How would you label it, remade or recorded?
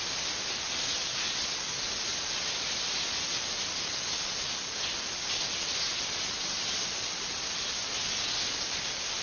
recorded